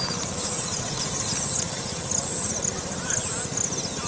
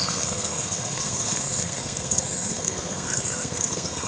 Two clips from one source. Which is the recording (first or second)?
first